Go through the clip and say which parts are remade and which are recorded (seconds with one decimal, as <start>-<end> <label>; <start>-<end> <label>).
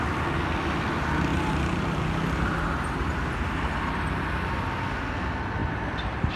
0.0-1.3 recorded; 1.3-2.0 remade; 2.0-6.4 recorded